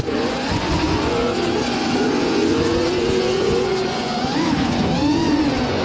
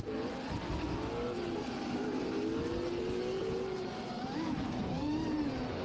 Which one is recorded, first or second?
second